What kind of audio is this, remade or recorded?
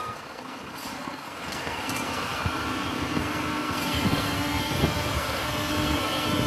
remade